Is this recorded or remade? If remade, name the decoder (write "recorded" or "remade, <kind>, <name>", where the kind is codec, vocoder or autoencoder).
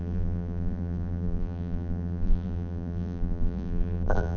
remade, vocoder, BigVGAN v2